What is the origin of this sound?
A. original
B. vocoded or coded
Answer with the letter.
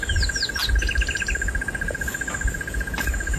A